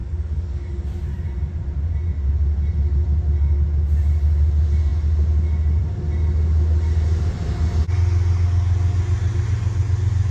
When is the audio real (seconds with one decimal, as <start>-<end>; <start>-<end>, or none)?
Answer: 0.7-10.3